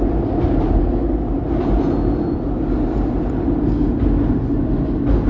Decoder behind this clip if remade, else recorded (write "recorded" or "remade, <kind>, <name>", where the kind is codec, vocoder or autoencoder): recorded